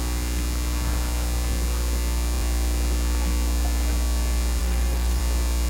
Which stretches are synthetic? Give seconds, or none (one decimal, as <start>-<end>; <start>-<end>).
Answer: 4.6-5.2